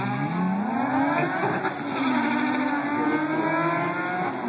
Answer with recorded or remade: recorded